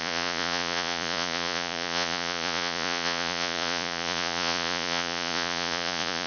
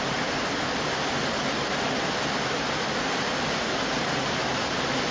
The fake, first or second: first